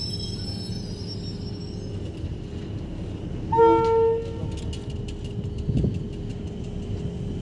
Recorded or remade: recorded